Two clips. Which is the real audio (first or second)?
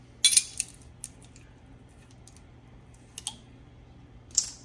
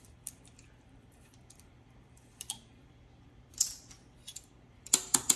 first